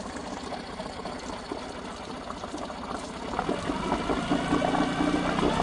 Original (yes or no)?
yes